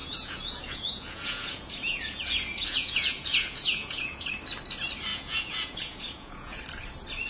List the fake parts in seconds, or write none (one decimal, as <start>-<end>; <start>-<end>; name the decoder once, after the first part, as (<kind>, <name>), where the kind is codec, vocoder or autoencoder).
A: 0.0-4.3 (vocoder, Vocos); 5.1-6.6